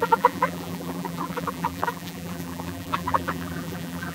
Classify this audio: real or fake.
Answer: fake